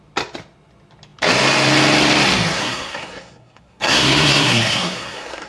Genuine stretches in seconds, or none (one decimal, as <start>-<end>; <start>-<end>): 0.0-2.5